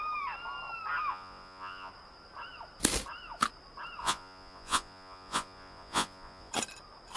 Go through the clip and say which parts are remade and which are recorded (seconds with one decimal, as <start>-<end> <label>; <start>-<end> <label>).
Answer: 0.0-1.1 recorded; 1.1-1.9 remade; 1.9-4.0 recorded; 4.0-6.5 remade; 6.5-7.2 recorded